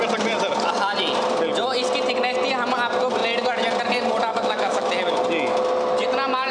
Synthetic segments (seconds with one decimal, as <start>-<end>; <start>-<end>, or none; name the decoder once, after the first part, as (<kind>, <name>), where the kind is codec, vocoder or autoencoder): 4.3-4.9 (autoencoder, DAC-VAE)